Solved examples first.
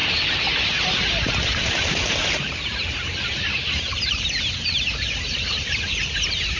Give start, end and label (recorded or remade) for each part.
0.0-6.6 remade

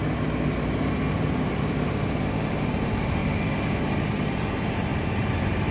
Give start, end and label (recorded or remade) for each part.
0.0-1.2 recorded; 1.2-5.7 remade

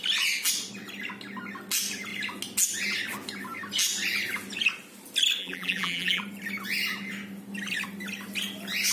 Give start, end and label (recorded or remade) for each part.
0.0-5.4 recorded; 5.4-6.2 remade; 6.2-8.9 recorded

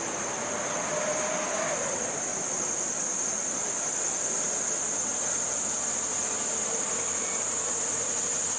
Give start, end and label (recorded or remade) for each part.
0.0-8.6 recorded

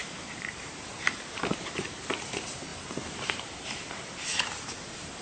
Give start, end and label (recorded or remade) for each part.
0.0-5.2 remade

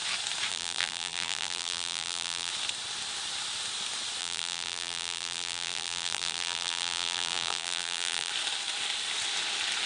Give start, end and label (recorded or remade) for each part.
0.0-0.5 recorded; 0.5-2.5 remade; 2.5-4.2 recorded; 4.2-8.3 remade; 8.3-9.9 recorded